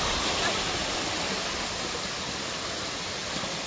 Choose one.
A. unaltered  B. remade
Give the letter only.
A